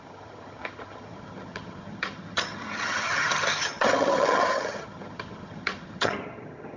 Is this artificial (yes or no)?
yes